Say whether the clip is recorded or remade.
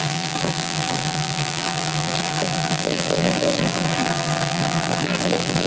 remade